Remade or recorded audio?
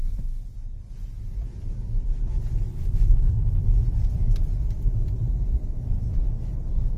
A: recorded